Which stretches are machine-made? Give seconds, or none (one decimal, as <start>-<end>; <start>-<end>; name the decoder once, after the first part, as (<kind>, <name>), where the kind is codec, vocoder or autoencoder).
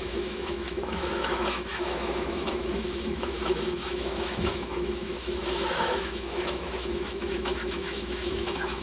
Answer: 0.0-8.8 (autoencoder, DAC-VAE)